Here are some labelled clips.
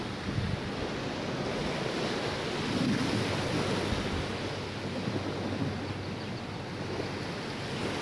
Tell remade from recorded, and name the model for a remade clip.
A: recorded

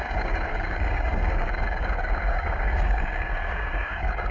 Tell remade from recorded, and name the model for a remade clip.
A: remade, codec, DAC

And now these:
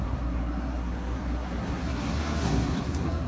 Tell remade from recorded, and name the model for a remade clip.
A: remade, codec, SNAC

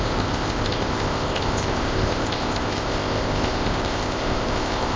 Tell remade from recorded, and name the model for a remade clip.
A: remade, codec, ZipCodec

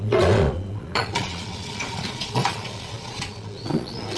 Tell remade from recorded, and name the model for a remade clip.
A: remade, vocoder, Vocos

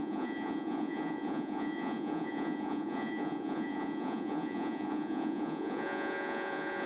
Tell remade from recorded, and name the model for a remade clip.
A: remade, vocoder, Vocos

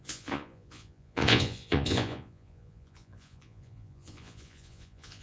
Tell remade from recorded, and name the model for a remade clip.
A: remade, vocoder, Vocos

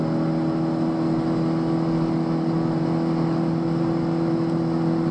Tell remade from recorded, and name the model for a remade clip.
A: recorded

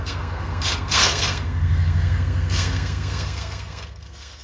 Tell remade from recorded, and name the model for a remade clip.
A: remade, codec, SNAC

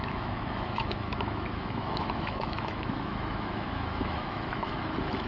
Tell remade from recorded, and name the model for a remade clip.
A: remade, autoencoder, DAC-VAE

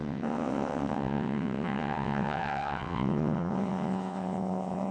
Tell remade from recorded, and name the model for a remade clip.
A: remade, vocoder, WaveNeXt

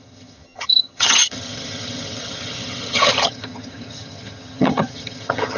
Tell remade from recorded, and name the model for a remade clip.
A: remade, vocoder, HiFi-GAN